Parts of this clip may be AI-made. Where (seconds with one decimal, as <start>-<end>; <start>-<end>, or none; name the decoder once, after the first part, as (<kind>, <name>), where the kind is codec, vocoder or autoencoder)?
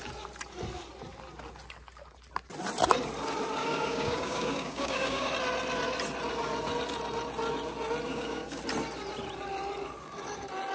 3.6-5.3 (codec, DAC); 8.1-8.6